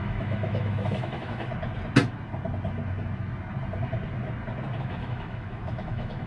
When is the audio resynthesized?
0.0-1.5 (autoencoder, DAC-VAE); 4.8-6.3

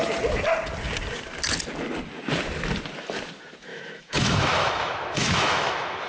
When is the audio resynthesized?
3.7-6.1 (autoencoder, DAC-VAE)